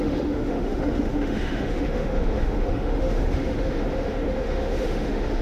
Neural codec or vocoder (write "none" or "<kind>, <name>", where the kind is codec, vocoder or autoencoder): autoencoder, DAC-VAE